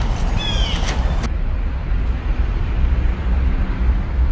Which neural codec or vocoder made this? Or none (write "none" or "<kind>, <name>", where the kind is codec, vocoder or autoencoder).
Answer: none